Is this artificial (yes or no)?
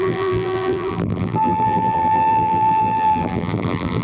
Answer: yes